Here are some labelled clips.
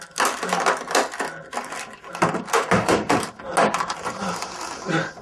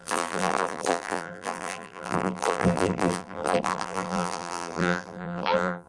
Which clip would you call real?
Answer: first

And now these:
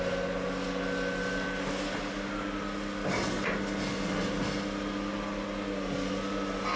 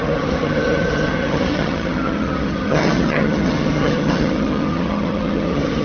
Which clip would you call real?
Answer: first